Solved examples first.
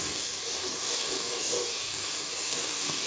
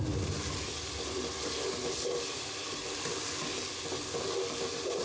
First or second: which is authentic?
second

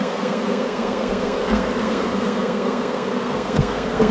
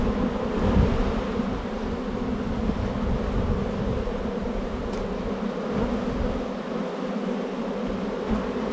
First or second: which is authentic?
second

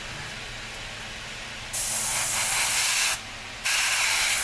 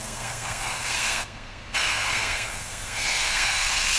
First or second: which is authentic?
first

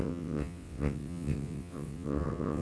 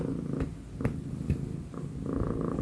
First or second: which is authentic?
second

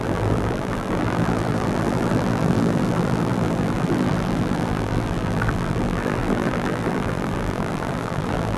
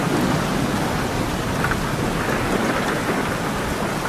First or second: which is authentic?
second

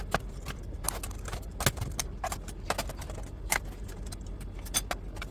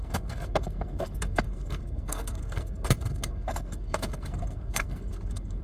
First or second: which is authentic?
first